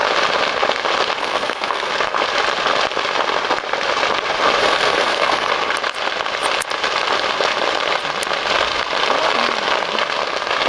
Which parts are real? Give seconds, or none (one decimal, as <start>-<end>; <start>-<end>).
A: 0.0-1.2; 1.9-4.6; 5.5-10.7